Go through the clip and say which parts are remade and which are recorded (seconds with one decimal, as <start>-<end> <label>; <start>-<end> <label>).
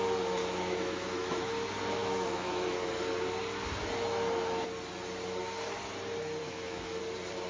0.0-0.4 recorded; 0.4-1.5 remade; 1.5-2.0 recorded; 2.0-2.9 remade; 2.9-6.4 recorded; 6.4-7.0 remade; 7.0-7.5 recorded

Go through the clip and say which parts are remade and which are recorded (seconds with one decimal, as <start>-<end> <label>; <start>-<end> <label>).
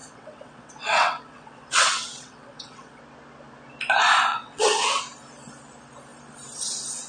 0.0-3.0 remade; 3.0-4.3 recorded; 4.3-5.0 remade; 5.0-7.1 recorded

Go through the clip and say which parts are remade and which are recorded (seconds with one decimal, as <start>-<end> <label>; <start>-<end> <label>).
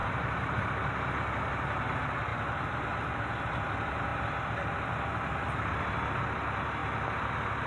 0.0-0.7 remade; 0.7-2.3 recorded; 2.3-3.1 remade; 3.1-7.7 recorded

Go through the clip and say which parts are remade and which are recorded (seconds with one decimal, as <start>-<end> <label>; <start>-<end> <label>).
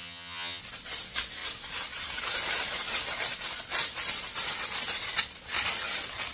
0.0-0.6 remade; 0.6-6.3 recorded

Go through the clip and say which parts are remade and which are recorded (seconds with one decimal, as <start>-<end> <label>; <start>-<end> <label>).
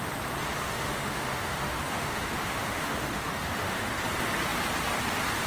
0.0-0.6 recorded; 0.6-3.9 remade; 3.9-5.5 recorded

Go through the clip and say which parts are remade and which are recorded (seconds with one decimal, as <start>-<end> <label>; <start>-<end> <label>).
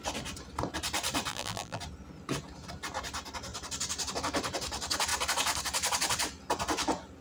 0.0-1.3 recorded; 1.3-1.8 remade; 1.8-7.2 recorded